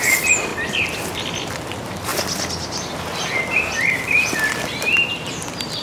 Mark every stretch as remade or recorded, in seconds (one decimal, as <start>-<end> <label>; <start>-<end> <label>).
0.0-2.1 remade; 2.1-3.5 recorded; 3.5-5.8 remade